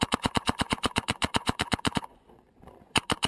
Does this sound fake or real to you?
fake